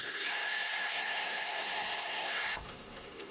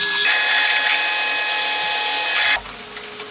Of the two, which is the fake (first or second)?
first